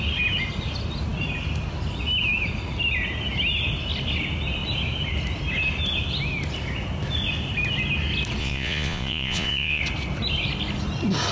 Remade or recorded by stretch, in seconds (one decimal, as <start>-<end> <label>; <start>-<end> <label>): 0.0-8.4 recorded; 8.4-9.8 remade; 9.8-11.3 recorded

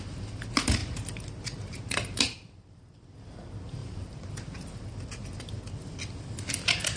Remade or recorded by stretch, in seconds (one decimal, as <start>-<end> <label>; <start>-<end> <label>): 0.0-0.8 recorded; 0.8-2.8 remade; 2.8-3.8 recorded; 3.8-4.8 remade; 4.8-7.0 recorded